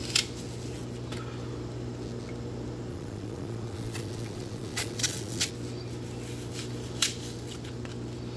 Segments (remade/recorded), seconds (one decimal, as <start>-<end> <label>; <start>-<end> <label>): 0.0-2.9 recorded; 2.9-5.5 remade; 5.5-8.4 recorded